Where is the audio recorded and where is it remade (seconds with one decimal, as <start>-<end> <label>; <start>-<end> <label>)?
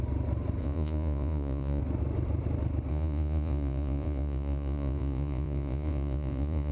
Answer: 0.0-0.6 recorded; 0.6-1.8 remade; 1.8-2.9 recorded; 2.9-6.7 remade